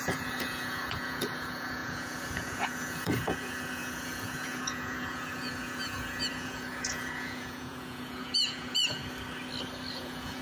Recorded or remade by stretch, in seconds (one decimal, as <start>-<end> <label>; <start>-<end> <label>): 0.0-9.0 remade; 9.0-9.9 recorded; 9.9-10.4 remade